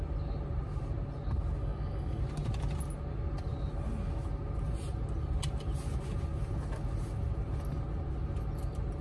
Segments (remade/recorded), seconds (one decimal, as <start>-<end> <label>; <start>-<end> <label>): 0.0-1.6 recorded; 1.6-2.2 remade; 2.2-9.0 recorded